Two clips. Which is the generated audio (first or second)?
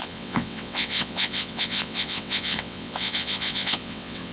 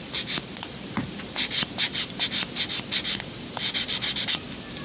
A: first